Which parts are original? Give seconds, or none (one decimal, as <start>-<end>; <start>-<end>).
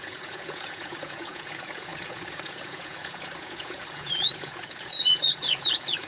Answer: none